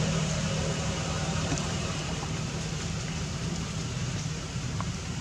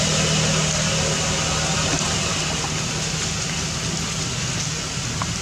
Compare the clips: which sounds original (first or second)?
second